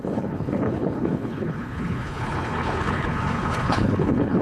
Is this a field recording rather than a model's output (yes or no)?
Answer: no